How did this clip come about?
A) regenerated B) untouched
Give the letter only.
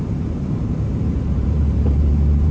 A